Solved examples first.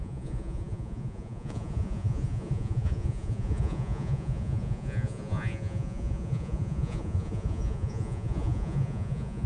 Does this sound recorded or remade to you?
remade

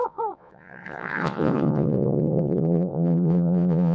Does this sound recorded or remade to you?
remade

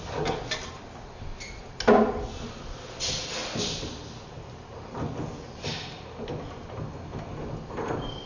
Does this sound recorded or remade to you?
recorded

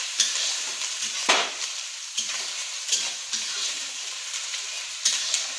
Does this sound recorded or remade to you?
remade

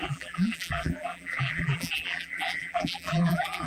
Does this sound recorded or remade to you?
remade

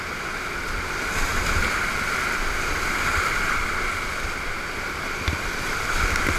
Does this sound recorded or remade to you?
recorded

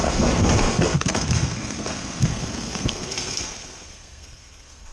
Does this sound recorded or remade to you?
remade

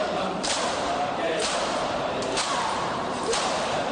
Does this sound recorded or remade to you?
remade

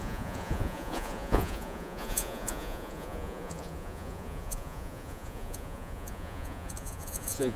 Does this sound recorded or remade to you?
remade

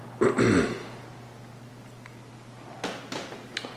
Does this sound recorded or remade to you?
recorded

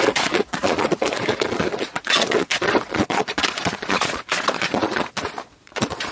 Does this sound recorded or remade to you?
remade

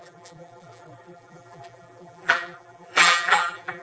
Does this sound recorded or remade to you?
remade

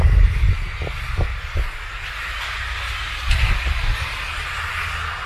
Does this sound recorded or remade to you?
recorded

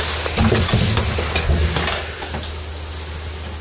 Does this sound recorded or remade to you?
recorded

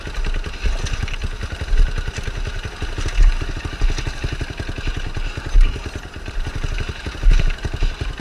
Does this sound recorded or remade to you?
recorded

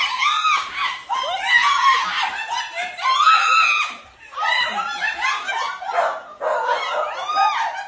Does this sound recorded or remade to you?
recorded